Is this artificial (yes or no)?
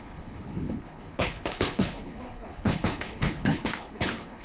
yes